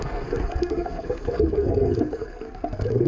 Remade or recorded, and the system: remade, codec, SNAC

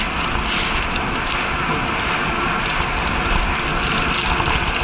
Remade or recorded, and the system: recorded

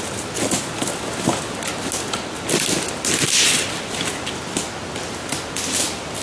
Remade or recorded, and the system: recorded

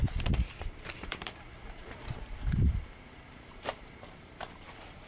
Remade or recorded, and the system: remade, vocoder, BigVGAN v2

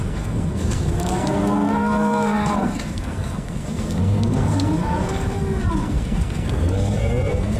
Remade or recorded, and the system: remade, codec, SNAC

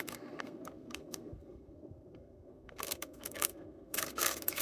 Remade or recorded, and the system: remade, codec, SNAC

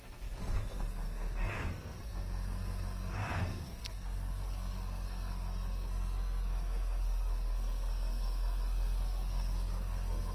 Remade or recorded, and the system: remade, codec, SNAC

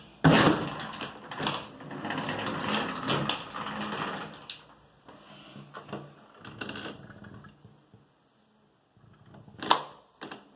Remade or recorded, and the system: recorded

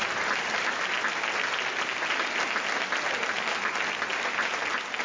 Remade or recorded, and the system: recorded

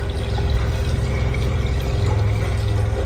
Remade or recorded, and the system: recorded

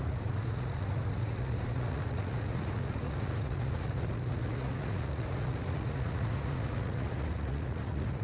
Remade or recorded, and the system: remade, vocoder, Vocos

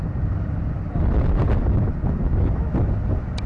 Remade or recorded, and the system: recorded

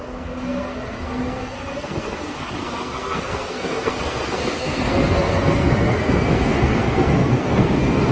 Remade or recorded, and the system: remade, codec, SNAC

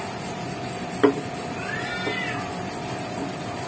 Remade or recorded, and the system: recorded